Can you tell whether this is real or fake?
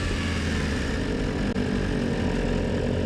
real